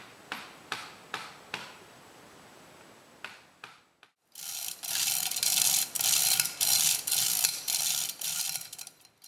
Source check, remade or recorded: recorded